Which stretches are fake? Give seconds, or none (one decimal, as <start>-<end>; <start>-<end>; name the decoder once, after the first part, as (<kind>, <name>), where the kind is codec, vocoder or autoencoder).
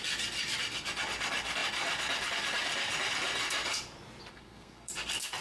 4.3-4.9 (codec, SNAC)